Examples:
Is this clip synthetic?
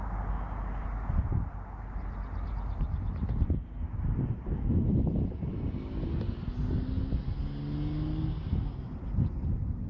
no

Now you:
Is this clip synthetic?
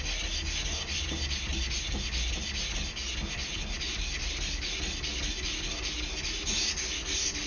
no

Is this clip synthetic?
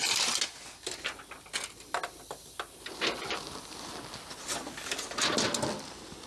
no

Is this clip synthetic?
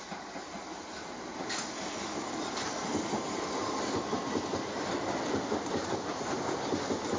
no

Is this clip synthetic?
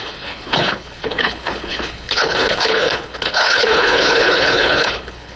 yes